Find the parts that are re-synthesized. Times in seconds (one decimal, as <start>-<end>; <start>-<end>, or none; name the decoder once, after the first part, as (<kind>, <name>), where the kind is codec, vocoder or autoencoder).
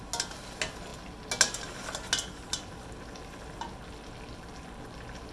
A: none